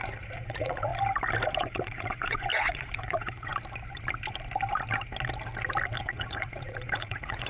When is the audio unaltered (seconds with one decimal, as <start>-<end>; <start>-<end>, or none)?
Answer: 0.9-1.6; 3.5-6.0